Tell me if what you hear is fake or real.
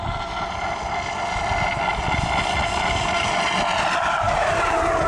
real